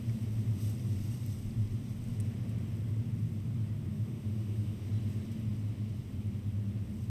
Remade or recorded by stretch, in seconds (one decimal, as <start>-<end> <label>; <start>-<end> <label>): 0.0-3.9 recorded; 3.9-4.9 remade; 4.9-7.1 recorded